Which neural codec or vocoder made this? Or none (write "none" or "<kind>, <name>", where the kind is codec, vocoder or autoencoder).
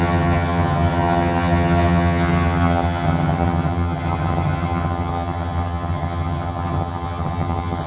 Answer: vocoder, HiFi-GAN